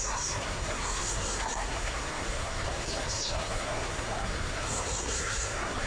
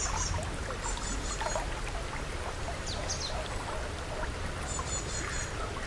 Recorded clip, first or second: second